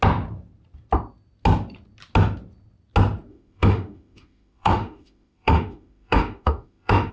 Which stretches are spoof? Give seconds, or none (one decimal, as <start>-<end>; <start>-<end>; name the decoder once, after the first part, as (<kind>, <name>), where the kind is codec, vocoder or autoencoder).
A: 3.3-7.1 (autoencoder, DAC-VAE)